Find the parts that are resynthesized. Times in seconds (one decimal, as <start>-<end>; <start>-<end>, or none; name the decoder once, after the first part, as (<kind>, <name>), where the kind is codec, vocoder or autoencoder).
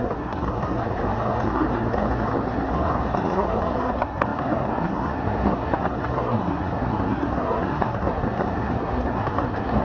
0.0-9.8 (codec, SNAC)